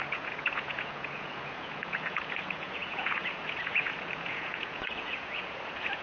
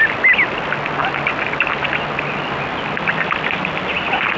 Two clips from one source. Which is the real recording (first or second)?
second